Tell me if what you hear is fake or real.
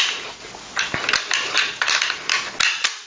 real